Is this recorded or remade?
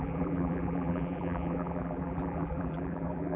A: remade